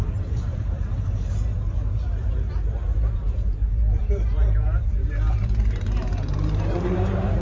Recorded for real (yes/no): no